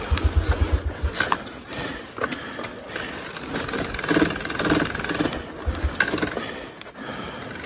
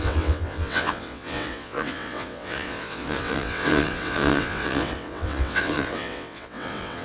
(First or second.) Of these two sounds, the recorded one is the first